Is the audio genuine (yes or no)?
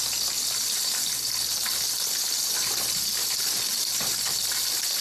yes